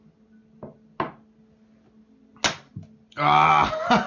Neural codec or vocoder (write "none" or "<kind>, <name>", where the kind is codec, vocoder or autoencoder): none